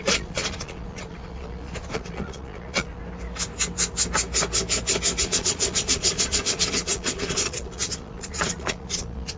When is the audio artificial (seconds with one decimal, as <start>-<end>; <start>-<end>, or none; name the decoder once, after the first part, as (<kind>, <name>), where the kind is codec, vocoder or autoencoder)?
0.0-3.0 (vocoder, Vocos); 5.2-9.4